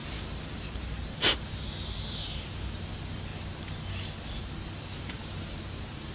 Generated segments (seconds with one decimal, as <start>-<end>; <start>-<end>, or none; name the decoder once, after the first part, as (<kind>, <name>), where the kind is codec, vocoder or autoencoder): 0.6-3.3 (vocoder, BigVGAN v2); 4.2-6.1

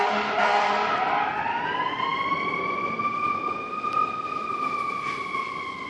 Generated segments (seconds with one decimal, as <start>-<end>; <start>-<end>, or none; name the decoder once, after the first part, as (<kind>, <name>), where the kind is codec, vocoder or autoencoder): 0.0-5.9 (vocoder, BigVGAN v2)

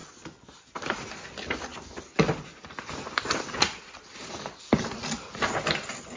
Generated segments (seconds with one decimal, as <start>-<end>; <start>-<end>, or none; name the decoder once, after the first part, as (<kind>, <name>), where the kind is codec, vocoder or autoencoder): 1.7-4.6 (vocoder, BigVGAN v2)

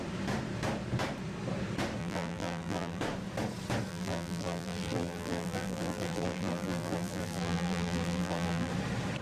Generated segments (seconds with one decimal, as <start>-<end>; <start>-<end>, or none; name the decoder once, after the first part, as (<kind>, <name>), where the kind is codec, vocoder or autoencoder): 2.0-3.0 (vocoder, BigVGAN v2); 3.9-8.7

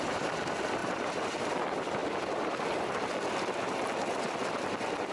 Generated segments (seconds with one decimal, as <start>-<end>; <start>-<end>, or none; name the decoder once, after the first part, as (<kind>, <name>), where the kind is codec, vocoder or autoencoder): 0.8-1.4 (vocoder, BigVGAN v2)

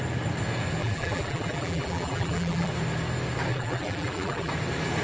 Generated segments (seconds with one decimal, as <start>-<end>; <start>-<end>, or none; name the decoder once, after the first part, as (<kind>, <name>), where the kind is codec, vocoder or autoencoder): 0.8-2.7 (vocoder, BigVGAN v2); 3.5-4.5

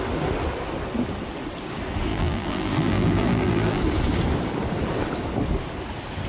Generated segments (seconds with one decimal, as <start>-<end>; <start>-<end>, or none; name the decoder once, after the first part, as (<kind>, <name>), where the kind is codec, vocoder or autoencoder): 2.1-3.8 (vocoder, BigVGAN v2)

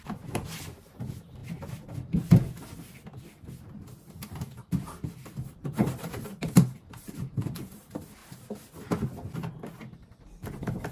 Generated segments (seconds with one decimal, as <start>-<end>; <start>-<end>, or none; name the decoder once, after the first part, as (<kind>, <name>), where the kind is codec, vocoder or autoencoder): 0.0-1.4 (vocoder, BigVGAN v2); 4.1-8.2; 10.2-10.9